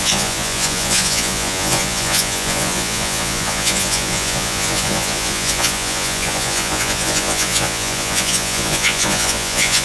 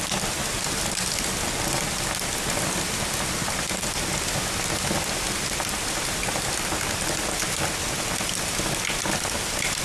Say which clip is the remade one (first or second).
first